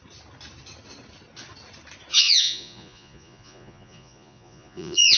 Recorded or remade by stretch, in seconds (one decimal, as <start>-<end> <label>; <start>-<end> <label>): 0.0-2.1 recorded; 2.1-5.2 remade